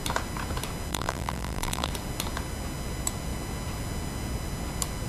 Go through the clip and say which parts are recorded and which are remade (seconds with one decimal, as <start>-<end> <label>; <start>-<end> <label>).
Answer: 0.0-0.9 recorded; 0.9-1.9 remade; 1.9-5.1 recorded